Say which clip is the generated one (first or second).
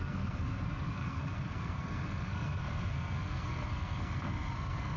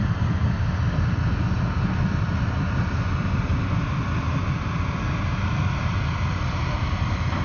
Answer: first